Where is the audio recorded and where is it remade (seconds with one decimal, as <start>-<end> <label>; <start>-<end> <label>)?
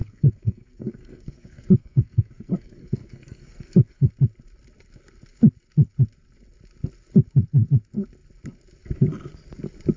0.0-4.1 remade; 4.1-10.0 recorded